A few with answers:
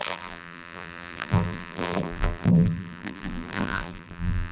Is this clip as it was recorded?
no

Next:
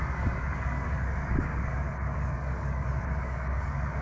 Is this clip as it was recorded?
no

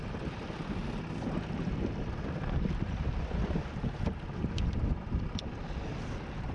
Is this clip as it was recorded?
yes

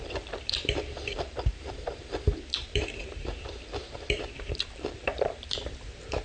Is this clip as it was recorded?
no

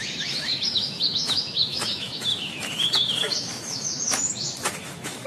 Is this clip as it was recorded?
no